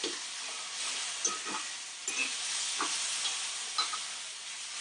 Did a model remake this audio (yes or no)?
no